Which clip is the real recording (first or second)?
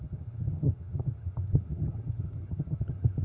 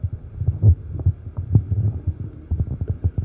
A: second